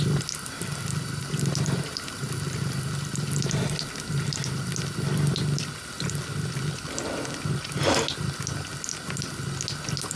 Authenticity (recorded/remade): recorded